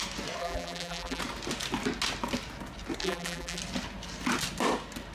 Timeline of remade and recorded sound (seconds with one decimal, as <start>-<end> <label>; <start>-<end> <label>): 0.0-0.4 recorded; 0.4-1.2 remade; 1.2-3.0 recorded; 3.0-3.6 remade; 3.6-5.1 recorded